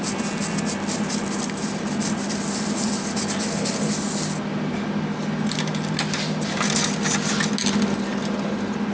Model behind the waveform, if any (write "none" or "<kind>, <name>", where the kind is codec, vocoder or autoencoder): none